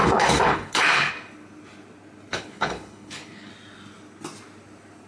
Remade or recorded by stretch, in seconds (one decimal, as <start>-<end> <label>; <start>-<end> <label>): 0.0-1.1 remade; 1.1-2.3 recorded; 2.3-3.5 remade; 3.5-5.1 recorded